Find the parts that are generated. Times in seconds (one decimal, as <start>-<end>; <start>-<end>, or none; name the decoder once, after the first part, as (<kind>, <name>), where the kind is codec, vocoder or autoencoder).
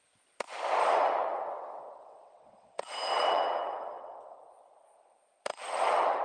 0.8-4.4 (vocoder, WaveNeXt); 5.5-6.2